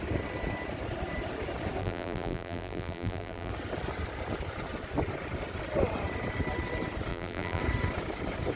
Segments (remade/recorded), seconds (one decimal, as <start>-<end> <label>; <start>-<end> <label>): 0.0-1.8 recorded; 1.8-3.5 remade; 3.5-7.1 recorded; 7.1-7.6 remade; 7.6-8.6 recorded